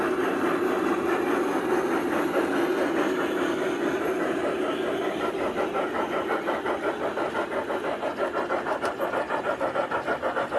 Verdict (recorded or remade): recorded